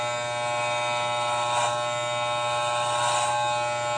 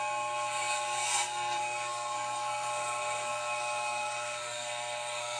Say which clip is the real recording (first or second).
first